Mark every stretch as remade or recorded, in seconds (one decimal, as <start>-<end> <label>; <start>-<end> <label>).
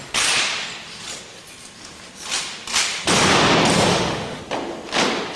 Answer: 0.0-3.9 recorded; 3.9-4.4 remade; 4.4-5.4 recorded